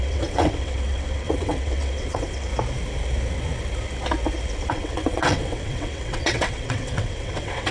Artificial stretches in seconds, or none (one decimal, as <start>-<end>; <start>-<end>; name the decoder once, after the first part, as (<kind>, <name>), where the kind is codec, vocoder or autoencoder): 0.0-2.5 (vocoder, WaveNeXt); 4.7-7.7

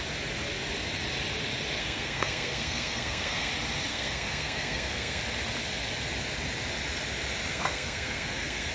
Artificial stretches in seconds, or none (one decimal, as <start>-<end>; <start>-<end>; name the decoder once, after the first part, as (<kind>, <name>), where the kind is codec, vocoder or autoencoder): 1.8-3.5 (codec, SNAC); 3.9-5.2; 7.5-8.7

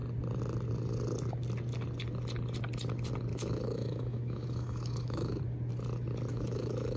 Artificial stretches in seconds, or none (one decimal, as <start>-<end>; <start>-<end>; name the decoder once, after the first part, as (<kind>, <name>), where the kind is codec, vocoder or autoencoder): 3.3-5.4 (autoencoder, DAC-VAE); 6.3-7.0

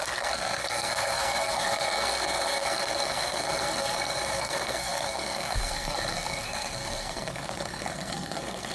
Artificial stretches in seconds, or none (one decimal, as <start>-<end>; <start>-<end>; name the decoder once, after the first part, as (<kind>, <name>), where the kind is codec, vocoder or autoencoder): 0.0-8.7 (codec, SNAC)